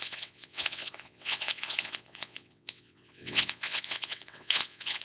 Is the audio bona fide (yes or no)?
no